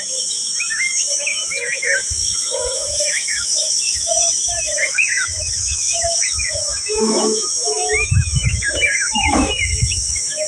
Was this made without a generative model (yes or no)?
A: no